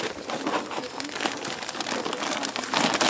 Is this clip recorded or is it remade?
recorded